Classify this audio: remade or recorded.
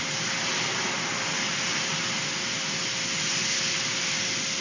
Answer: recorded